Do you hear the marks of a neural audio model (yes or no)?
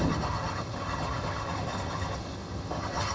yes